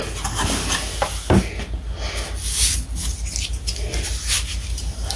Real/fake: real